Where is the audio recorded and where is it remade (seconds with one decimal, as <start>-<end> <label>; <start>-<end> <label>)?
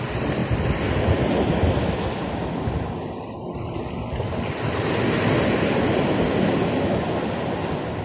0.0-8.0 recorded